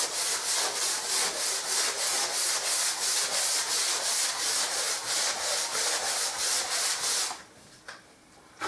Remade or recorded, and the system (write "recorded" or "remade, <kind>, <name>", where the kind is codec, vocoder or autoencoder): recorded